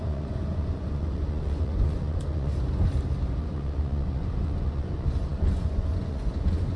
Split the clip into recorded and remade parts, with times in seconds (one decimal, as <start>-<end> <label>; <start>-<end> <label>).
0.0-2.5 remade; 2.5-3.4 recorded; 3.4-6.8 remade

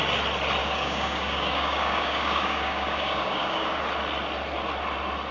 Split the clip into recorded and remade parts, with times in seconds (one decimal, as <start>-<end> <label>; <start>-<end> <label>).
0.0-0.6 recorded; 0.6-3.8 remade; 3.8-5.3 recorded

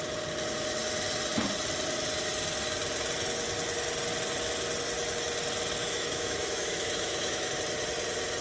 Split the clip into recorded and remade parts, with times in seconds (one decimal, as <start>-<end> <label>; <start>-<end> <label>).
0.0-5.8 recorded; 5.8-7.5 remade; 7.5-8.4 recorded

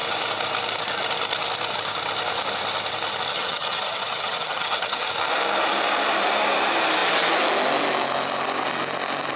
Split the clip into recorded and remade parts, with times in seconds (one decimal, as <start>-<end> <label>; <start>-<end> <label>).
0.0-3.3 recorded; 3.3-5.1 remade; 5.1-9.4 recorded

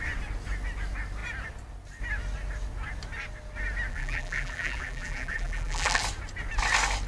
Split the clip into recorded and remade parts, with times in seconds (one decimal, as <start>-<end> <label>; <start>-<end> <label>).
0.0-3.9 recorded; 3.9-6.0 remade; 6.0-7.1 recorded

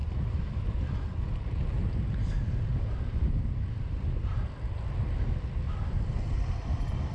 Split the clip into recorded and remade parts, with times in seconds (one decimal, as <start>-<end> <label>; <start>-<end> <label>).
0.0-4.3 recorded; 4.3-6.3 remade; 6.3-7.1 recorded